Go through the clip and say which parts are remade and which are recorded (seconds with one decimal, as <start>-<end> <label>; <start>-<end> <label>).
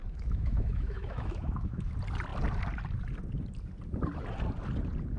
0.0-1.9 remade; 1.9-5.2 recorded